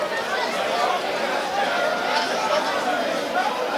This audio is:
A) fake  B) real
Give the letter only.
B